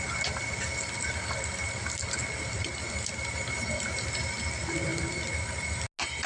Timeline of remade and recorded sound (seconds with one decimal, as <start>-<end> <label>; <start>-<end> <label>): 0.0-6.3 recorded